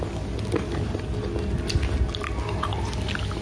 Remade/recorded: recorded